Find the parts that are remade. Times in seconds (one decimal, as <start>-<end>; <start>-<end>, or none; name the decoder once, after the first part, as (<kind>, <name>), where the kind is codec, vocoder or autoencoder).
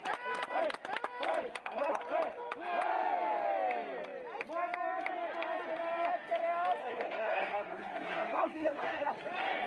1.5-2.0 (codec, SNAC); 6.8-9.1